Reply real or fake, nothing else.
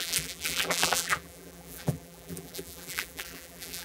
fake